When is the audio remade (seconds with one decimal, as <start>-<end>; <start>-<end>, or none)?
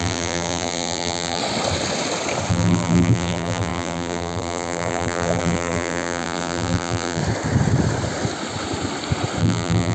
0.0-1.4; 2.5-7.2; 9.4-9.9